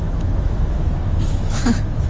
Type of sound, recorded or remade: remade